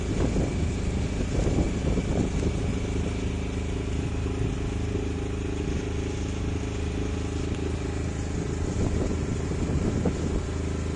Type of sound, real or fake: real